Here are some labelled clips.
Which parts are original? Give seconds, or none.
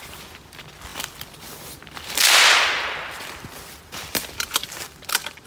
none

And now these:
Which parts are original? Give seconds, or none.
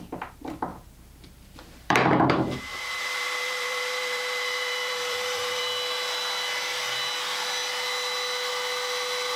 0.0-0.7; 5.6-9.4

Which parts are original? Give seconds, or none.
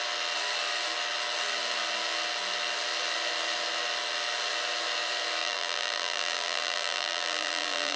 0.0-5.4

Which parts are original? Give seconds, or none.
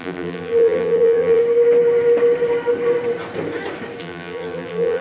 1.4-4.0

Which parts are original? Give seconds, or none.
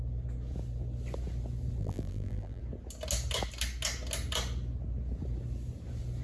0.0-1.8; 2.6-6.2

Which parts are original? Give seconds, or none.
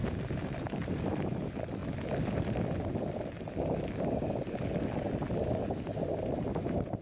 1.8-6.0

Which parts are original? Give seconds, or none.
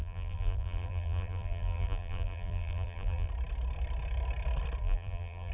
3.3-4.8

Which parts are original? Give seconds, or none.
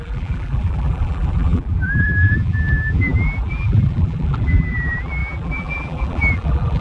none